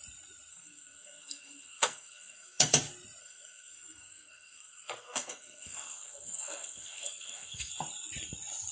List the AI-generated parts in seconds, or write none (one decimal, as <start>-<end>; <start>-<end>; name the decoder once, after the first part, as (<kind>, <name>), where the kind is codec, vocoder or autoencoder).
0.5-2.7 (codec, SNAC); 3.2-7.7